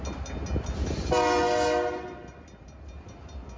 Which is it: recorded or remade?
recorded